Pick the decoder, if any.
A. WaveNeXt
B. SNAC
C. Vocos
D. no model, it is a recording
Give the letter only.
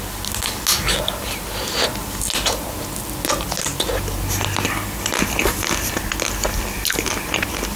D